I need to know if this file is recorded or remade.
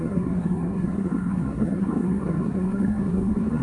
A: remade